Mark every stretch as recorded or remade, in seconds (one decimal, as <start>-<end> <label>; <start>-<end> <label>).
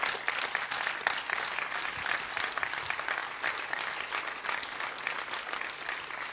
0.0-6.3 recorded